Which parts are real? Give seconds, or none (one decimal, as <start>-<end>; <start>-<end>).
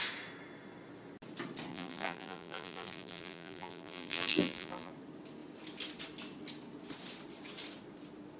0.0-1.7; 4.9-8.4